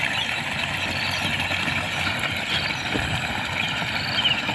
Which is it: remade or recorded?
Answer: recorded